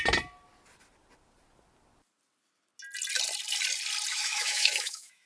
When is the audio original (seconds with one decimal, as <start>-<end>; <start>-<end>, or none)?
0.0-4.1